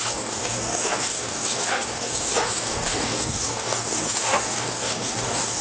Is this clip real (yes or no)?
no